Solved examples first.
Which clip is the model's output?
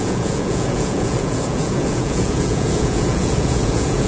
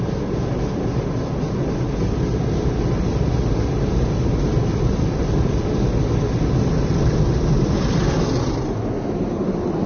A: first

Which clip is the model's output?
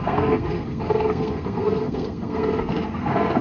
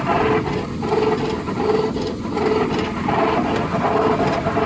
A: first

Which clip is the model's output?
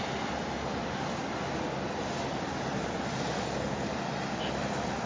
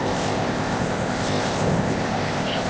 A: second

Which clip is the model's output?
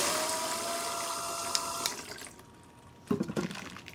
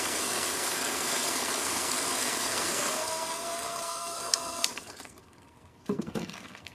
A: second